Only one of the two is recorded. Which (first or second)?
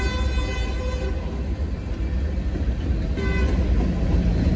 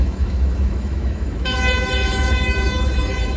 first